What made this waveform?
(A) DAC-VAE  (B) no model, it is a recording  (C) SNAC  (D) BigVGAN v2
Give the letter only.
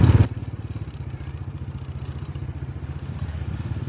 B